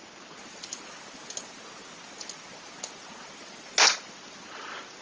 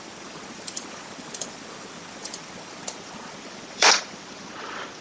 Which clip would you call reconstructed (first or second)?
second